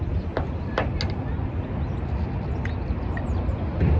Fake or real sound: real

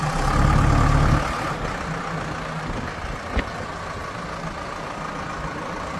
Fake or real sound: real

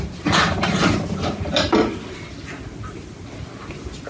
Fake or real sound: real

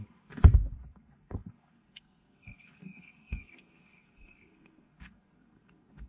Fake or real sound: fake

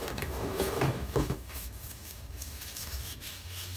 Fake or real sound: fake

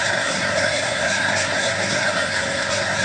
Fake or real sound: fake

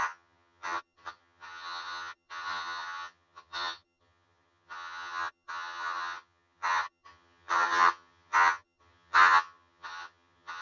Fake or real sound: fake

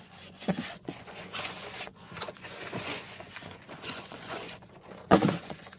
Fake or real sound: fake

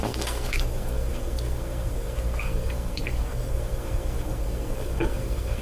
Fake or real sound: fake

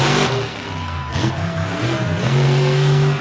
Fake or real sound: fake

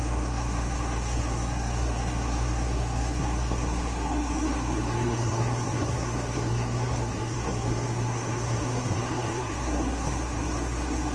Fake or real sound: fake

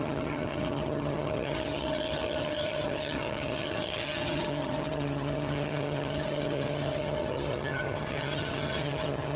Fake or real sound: fake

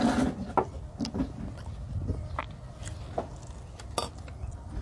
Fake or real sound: real